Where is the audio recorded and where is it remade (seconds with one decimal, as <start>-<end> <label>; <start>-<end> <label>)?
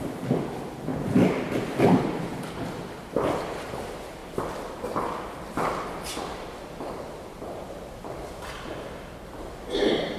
0.0-10.2 recorded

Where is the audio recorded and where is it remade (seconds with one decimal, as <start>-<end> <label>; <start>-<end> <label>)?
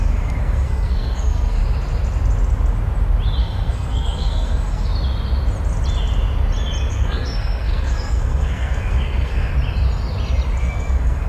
0.0-1.6 remade; 1.6-3.4 recorded; 3.4-4.9 remade; 4.9-6.9 recorded; 6.9-9.5 remade; 9.5-10.6 recorded; 10.6-11.3 remade